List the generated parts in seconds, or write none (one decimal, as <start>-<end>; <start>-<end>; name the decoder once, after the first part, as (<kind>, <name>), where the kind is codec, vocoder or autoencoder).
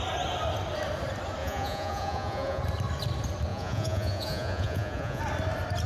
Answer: 1.4-2.6 (vocoder, Vocos); 3.5-5.2